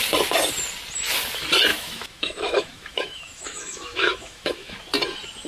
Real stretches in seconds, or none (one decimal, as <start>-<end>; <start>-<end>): 0.0-1.7; 4.8-5.5